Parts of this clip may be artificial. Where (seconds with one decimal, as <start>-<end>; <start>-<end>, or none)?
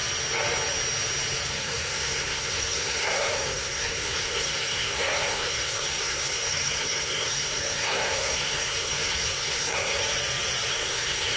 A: 1.5-10.0; 10.7-11.4